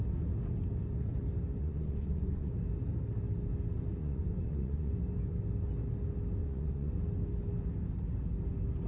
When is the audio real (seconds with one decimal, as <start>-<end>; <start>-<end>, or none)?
0.0-1.6; 2.5-4.0; 4.9-6.4; 6.9-8.9